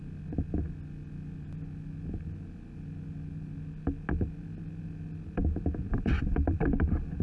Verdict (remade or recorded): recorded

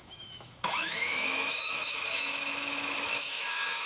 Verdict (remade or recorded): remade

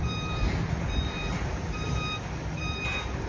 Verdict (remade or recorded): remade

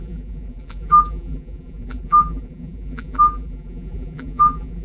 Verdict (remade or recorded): remade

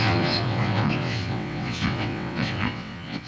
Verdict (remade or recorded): remade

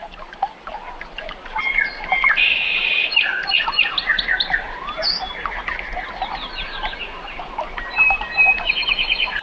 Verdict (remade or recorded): recorded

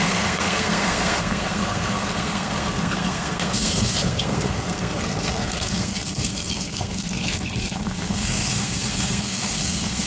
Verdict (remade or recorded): remade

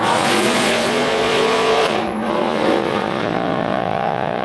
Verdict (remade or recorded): remade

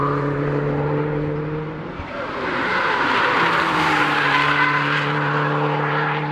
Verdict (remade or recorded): remade